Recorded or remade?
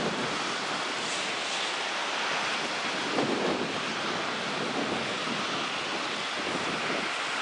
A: recorded